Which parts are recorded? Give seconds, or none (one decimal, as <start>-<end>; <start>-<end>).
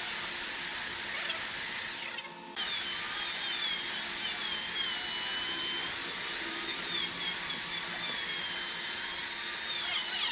0.0-10.3